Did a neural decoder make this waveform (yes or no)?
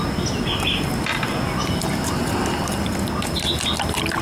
no